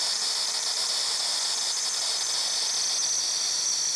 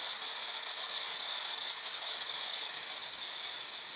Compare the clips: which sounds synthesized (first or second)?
second